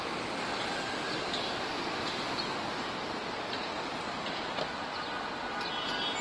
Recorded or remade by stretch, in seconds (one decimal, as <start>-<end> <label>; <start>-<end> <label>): 0.0-0.5 recorded; 0.5-4.2 remade; 4.2-6.2 recorded